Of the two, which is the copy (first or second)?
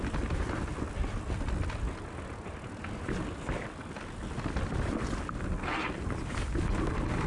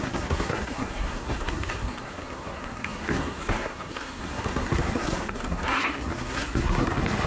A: second